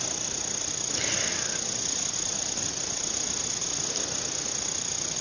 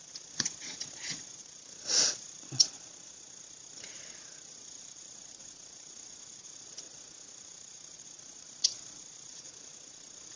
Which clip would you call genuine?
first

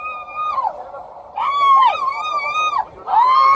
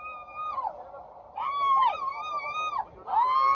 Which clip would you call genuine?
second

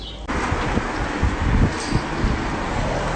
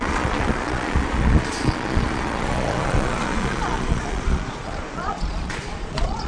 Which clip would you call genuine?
first